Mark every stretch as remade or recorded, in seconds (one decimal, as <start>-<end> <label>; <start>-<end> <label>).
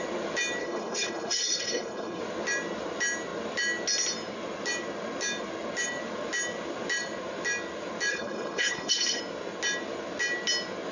0.0-0.6 recorded; 0.6-2.2 remade; 2.2-8.1 recorded; 8.1-9.2 remade; 9.2-10.9 recorded